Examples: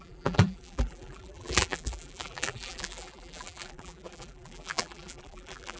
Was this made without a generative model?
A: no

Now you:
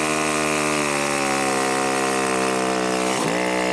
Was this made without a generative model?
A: yes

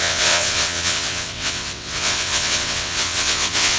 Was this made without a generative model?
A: no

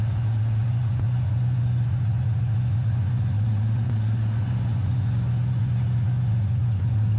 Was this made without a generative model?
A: no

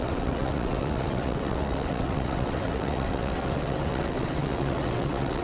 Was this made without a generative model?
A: no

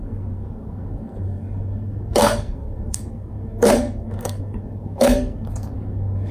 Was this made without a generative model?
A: no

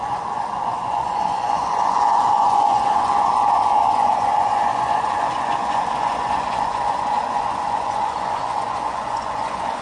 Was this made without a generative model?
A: no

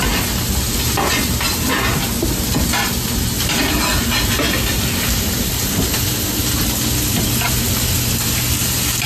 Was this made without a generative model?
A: yes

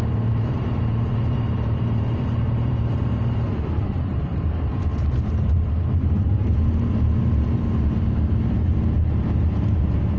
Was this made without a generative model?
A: no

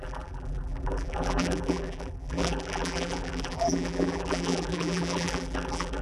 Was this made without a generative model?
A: no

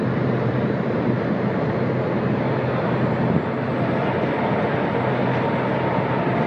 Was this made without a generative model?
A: yes